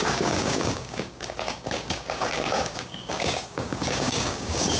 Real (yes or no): no